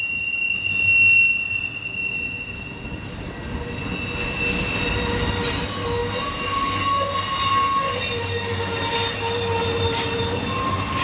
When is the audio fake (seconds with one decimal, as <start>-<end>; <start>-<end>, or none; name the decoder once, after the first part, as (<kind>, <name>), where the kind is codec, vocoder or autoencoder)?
none